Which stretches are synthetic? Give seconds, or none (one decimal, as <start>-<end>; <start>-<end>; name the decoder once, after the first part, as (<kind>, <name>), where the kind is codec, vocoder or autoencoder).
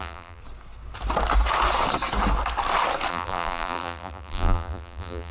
0.0-0.4 (vocoder, BigVGAN v2); 3.1-5.3